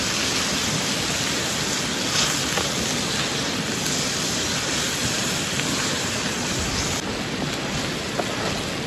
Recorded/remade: recorded